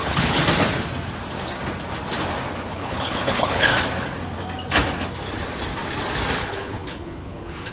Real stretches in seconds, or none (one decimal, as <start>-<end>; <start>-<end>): 0.4-2.7; 3.7-6.3